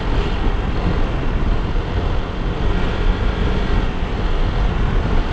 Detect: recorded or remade recorded